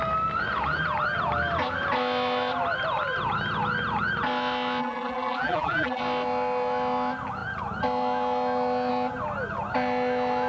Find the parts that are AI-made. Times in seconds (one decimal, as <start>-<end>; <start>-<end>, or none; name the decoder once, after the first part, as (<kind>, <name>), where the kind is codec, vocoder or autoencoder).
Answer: 4.8-6.0 (vocoder, BigVGAN v2)